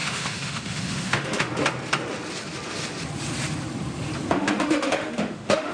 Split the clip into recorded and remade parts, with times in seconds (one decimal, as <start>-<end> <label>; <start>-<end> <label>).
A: 0.0-1.5 remade; 1.5-4.3 recorded; 4.3-5.7 remade